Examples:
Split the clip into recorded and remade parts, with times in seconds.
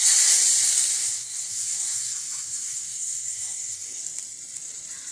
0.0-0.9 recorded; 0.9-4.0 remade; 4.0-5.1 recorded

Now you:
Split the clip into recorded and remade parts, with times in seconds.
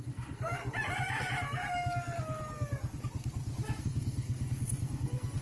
0.0-0.6 remade; 0.6-3.8 recorded; 3.8-5.4 remade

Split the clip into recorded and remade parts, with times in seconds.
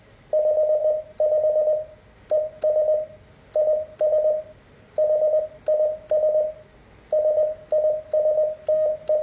0.0-9.2 recorded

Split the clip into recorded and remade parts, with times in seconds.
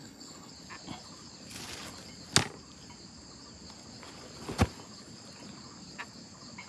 0.0-0.5 remade; 0.5-6.7 recorded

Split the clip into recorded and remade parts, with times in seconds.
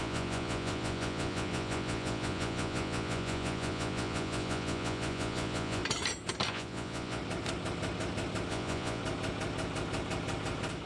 0.0-5.8 remade; 5.8-6.5 recorded; 6.5-7.2 remade; 7.2-8.5 recorded; 8.5-9.0 remade; 9.0-10.9 recorded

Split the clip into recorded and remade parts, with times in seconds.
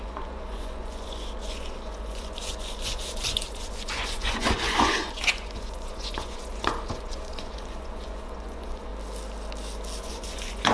0.0-8.9 remade; 8.9-10.0 recorded; 10.0-10.7 remade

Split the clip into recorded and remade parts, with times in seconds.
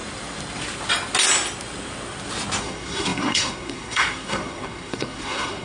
0.0-2.6 recorded; 2.6-5.6 remade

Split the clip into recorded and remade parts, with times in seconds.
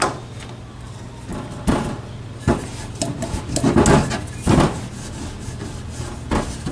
0.0-6.7 recorded